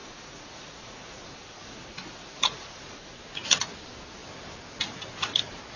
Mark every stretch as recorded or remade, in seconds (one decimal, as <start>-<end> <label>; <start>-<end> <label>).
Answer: 0.0-3.2 remade; 3.2-5.8 recorded